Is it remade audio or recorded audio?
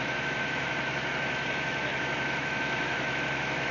remade